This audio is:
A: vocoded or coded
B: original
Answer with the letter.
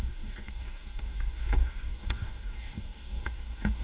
A